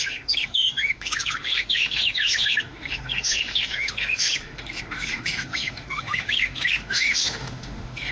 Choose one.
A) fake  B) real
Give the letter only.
A